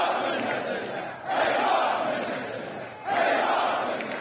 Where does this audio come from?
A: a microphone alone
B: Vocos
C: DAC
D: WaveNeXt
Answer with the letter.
A